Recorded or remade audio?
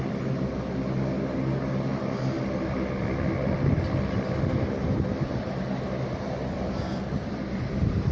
recorded